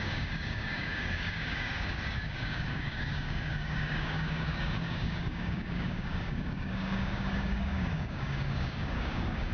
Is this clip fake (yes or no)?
yes